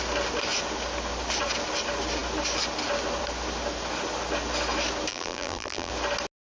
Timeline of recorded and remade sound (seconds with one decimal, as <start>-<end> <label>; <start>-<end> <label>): 0.0-5.1 recorded; 5.1-5.9 remade; 5.9-6.4 recorded